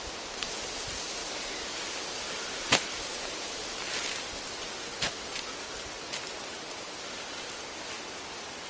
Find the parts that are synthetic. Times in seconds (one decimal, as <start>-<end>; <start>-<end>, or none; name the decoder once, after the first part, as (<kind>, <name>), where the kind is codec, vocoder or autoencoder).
none